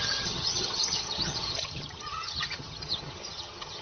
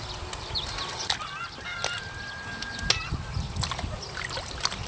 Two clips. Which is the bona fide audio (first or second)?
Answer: second